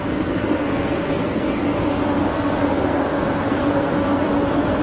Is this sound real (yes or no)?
no